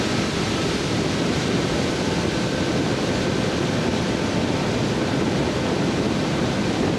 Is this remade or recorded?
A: recorded